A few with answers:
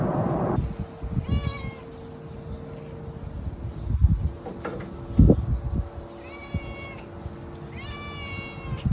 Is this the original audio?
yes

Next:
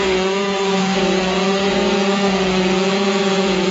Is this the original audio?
no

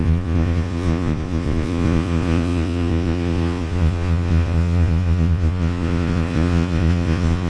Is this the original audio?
no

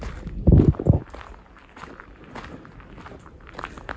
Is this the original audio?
yes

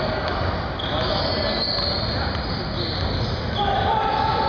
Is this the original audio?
yes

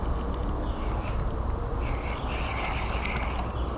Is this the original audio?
yes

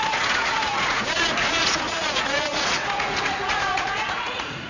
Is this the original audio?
no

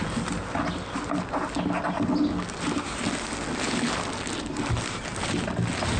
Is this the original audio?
yes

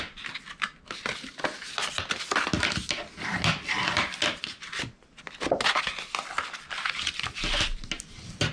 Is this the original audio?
yes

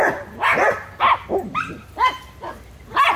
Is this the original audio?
yes